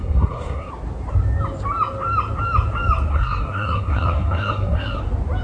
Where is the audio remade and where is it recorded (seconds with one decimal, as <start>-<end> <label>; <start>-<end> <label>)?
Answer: 0.0-0.7 remade; 0.7-3.1 recorded; 3.1-5.0 remade; 5.0-5.4 recorded